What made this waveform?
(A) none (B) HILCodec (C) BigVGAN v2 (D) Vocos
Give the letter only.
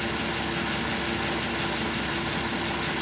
A